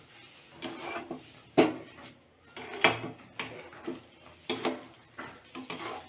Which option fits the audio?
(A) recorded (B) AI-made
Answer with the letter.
A